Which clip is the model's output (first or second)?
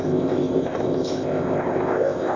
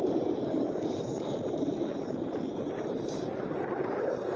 first